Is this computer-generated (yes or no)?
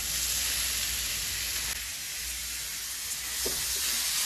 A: no